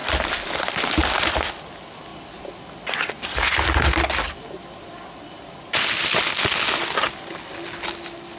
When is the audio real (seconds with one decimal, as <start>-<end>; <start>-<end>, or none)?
0.0-8.4